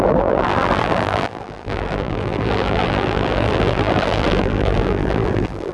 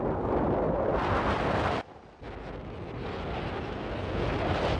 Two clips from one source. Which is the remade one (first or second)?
first